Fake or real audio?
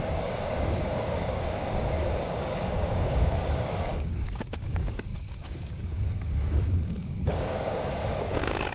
fake